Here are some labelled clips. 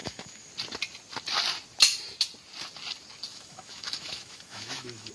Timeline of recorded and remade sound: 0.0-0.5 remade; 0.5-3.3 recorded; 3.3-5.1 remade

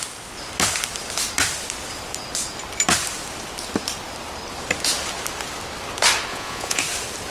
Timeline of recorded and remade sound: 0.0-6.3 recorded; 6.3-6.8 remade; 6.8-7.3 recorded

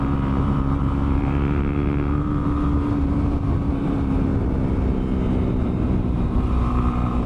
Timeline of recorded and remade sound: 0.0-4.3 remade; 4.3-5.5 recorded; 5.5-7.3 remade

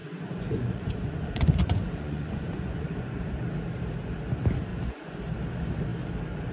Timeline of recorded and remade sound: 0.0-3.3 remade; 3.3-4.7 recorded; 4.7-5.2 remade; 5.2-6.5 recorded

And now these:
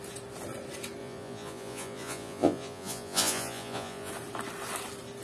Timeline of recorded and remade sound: 0.0-1.0 recorded; 1.0-4.1 remade; 4.1-5.2 recorded

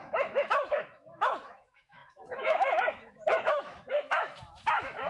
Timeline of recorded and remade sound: 0.0-5.1 remade

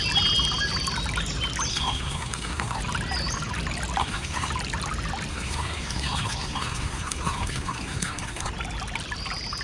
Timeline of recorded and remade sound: 0.0-1.7 recorded; 1.7-2.8 remade; 2.8-4.0 recorded; 4.0-4.5 remade; 4.5-5.3 recorded; 5.3-8.5 remade; 8.5-9.6 recorded